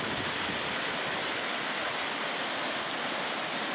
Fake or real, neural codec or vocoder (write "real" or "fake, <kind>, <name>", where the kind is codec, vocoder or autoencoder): real